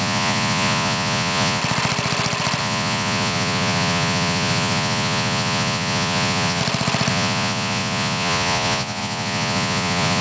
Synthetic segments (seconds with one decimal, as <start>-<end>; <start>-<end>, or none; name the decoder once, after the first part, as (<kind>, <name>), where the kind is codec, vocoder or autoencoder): 0.0-1.6 (vocoder, Vocos); 2.6-6.6; 7.1-10.2